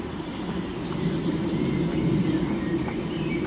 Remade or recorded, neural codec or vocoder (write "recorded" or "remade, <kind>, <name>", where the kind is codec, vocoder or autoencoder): recorded